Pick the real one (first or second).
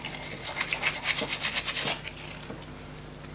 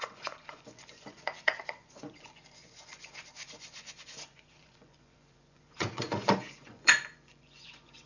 first